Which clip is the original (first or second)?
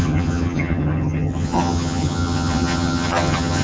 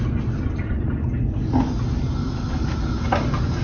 second